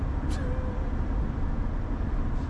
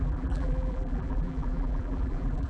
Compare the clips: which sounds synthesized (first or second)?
second